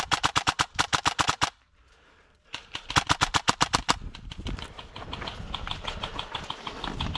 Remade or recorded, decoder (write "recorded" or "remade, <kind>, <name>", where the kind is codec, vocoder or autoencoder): remade, vocoder, BigVGAN v2